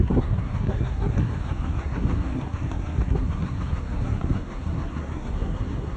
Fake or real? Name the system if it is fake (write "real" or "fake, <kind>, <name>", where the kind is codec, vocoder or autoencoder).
fake, codec, SNAC